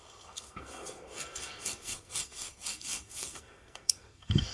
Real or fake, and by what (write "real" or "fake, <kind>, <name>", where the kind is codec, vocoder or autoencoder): fake, codec, SNAC